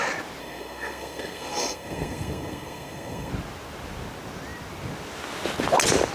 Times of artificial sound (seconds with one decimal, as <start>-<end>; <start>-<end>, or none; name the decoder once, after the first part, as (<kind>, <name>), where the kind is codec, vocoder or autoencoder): 0.4-3.3 (codec, SNAC)